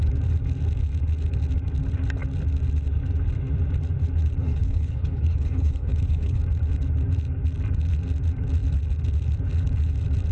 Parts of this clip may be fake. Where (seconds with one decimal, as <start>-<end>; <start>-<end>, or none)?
4.4-6.4